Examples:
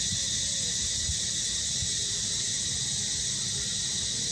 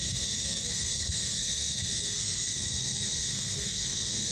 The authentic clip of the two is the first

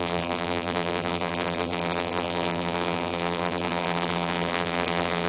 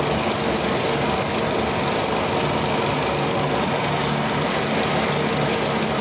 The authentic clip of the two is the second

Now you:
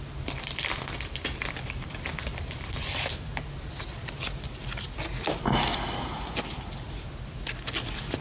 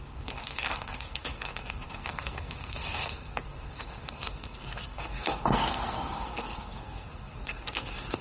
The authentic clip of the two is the first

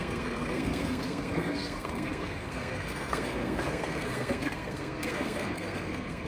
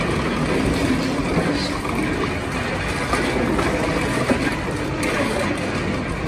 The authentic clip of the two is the second